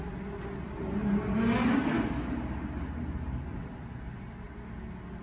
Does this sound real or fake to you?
real